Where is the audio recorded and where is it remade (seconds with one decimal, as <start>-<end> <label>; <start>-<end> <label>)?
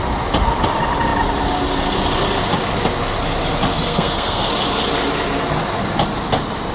0.0-3.7 recorded; 3.7-4.5 remade; 4.5-6.7 recorded